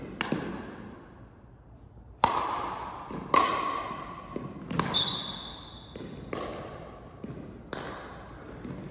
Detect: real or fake real